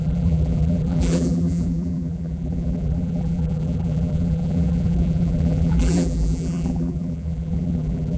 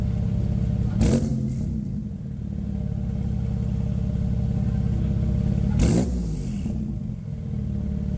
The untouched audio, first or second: second